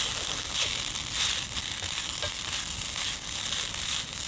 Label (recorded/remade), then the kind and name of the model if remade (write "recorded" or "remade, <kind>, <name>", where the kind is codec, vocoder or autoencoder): recorded